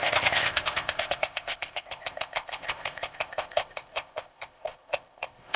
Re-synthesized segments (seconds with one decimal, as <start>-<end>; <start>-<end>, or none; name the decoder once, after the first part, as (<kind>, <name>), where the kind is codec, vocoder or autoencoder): 0.0-5.6 (codec, ZipCodec)